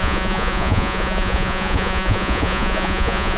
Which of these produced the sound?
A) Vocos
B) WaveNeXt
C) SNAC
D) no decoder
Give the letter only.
A